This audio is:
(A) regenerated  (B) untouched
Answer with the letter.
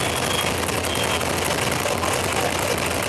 B